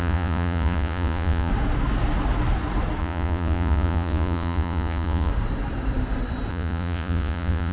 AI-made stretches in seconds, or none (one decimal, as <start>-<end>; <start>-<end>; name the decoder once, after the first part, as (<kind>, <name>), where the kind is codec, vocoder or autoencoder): 0.0-1.5 (vocoder, Vocos); 3.0-5.3; 6.5-7.7